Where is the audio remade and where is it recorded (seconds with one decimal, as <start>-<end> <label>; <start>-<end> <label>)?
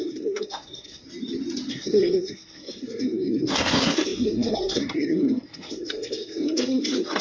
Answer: 0.0-1.0 remade; 1.0-1.7 recorded; 1.7-7.2 remade